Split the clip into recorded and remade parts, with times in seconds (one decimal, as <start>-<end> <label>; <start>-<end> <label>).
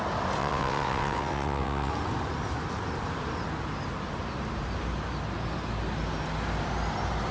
0.0-0.4 recorded; 0.4-1.9 remade; 1.9-7.3 recorded